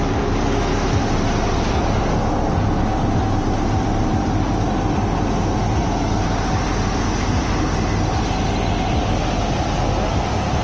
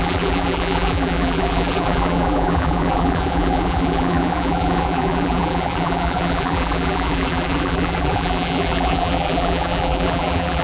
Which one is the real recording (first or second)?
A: first